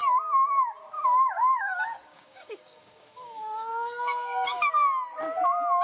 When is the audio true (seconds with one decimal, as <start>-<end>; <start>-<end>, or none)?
0.0-1.4; 4.7-5.8

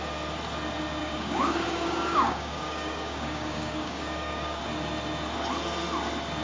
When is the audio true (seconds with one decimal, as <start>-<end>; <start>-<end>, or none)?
0.0-1.0; 4.6-6.4